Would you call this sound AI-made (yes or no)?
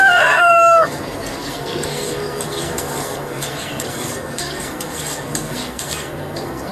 yes